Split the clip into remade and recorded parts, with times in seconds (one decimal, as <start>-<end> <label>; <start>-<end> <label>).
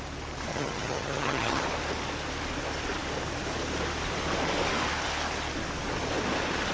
0.0-0.5 recorded; 0.5-1.6 remade; 1.6-6.7 recorded